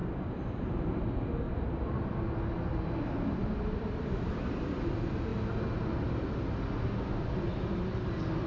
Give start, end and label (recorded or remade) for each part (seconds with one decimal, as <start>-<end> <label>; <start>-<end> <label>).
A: 0.0-1.0 remade; 1.0-3.4 recorded; 3.4-4.8 remade; 4.8-8.5 recorded